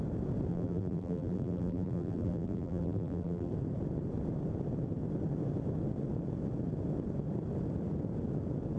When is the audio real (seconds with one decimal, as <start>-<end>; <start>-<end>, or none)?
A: 0.0-0.5; 3.5-8.8